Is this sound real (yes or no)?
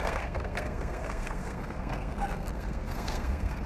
no